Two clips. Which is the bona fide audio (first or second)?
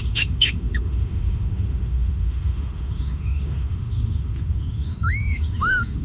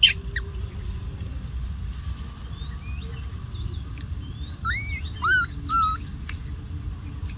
second